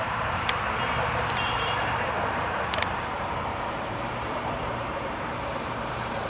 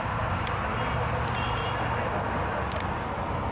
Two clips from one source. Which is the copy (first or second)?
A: first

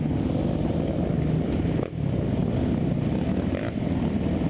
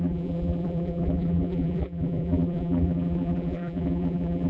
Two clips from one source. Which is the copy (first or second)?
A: second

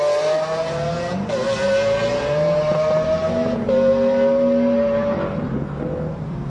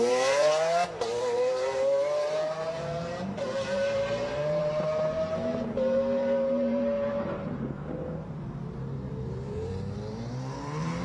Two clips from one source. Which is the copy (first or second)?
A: second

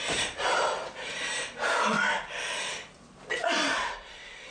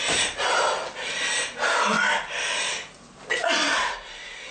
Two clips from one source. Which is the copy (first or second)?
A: first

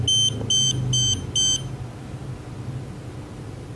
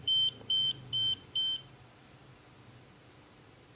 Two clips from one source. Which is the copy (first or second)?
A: second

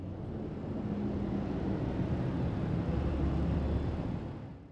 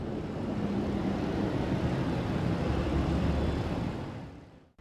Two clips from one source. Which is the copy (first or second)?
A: second